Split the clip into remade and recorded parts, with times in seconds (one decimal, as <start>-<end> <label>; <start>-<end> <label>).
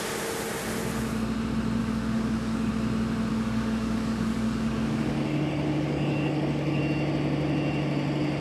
0.0-1.8 recorded; 1.8-2.7 remade; 2.7-3.3 recorded; 3.3-6.8 remade; 6.8-8.4 recorded